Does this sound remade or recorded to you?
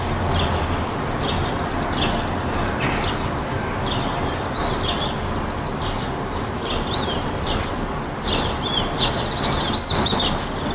recorded